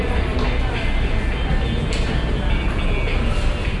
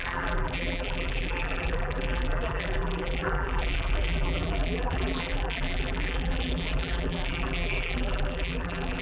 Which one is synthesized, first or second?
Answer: second